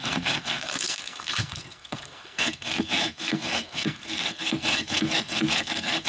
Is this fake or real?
fake